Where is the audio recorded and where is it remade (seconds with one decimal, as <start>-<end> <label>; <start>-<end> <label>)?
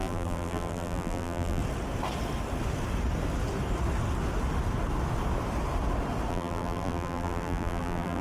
0.0-1.6 remade; 1.6-6.3 recorded; 6.3-8.2 remade